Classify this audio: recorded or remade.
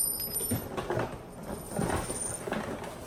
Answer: recorded